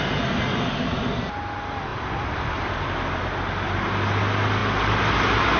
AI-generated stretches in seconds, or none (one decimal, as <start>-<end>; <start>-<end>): none